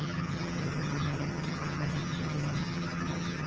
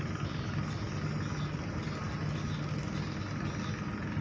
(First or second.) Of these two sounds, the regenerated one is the first